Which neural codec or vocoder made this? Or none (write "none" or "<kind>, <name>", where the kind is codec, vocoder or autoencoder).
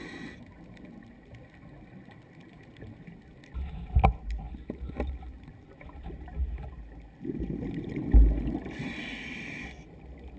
none